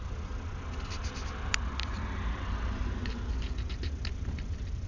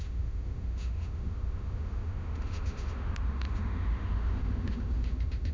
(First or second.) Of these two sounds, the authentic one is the first